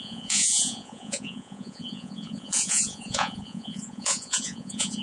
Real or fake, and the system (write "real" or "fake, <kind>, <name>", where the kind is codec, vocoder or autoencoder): fake, vocoder, Vocos